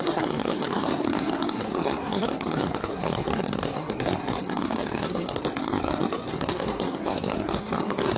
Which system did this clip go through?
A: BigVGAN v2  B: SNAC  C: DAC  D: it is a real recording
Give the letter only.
B